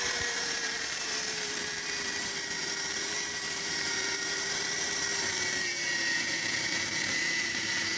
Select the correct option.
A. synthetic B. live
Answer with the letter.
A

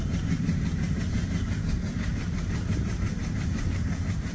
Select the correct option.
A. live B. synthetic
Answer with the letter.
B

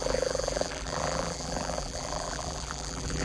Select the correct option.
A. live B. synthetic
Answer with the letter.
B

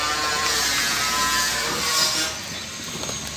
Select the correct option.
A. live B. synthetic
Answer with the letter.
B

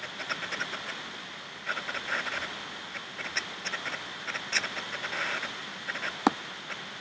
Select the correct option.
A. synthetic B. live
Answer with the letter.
B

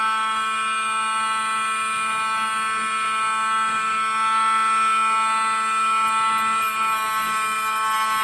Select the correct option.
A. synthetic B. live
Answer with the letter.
B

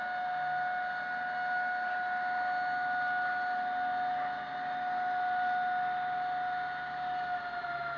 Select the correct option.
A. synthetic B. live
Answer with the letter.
B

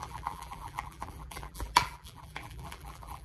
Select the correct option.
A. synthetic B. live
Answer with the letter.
A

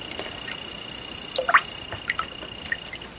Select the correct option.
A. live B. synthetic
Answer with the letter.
A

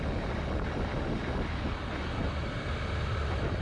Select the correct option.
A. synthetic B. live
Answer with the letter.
B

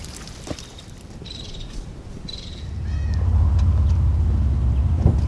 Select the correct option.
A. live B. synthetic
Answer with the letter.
A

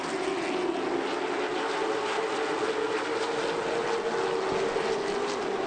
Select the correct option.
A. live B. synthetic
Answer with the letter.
A